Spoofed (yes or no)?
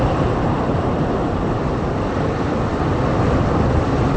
no